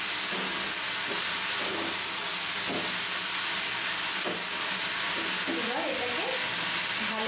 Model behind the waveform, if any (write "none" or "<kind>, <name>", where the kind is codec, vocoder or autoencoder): none